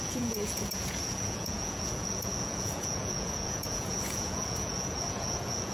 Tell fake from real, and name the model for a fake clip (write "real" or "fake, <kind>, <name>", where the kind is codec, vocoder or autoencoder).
fake, vocoder, Vocos